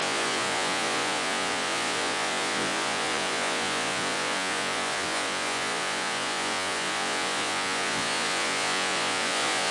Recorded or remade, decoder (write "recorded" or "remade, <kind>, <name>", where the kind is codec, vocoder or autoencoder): remade, vocoder, Vocos